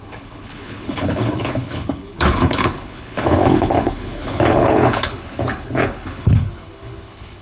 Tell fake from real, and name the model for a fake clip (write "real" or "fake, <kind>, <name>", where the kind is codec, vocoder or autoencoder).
fake, codec, HILCodec